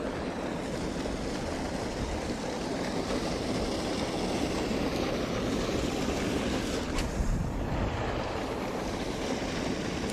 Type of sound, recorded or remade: recorded